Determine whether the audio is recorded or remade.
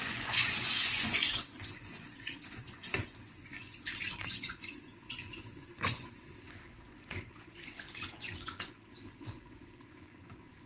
remade